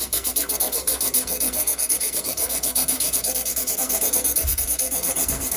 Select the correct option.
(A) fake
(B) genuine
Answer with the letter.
A